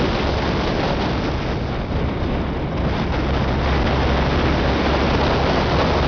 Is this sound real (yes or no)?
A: yes